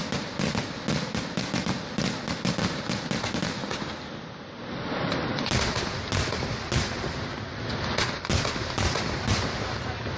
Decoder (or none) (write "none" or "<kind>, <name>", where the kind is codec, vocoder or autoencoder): none